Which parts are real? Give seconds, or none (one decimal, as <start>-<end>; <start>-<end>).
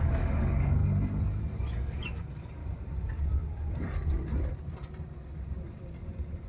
0.8-1.6; 2.6-6.5